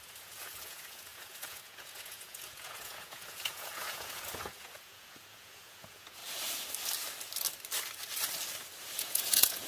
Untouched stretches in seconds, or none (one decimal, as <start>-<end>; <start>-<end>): 6.2-9.0